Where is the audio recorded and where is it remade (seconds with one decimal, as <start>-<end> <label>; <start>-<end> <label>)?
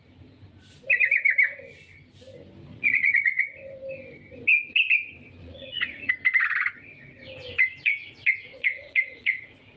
0.0-2.7 recorded; 2.7-3.4 remade; 3.4-5.4 recorded; 5.4-6.1 remade; 6.1-8.5 recorded; 8.5-9.8 remade